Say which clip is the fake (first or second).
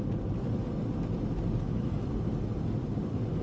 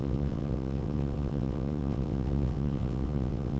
second